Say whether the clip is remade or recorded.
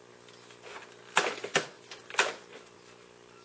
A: recorded